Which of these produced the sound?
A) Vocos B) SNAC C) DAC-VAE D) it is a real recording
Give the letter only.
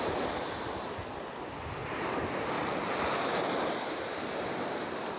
D